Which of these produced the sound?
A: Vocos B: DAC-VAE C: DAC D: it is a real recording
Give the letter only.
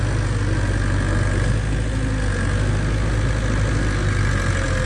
D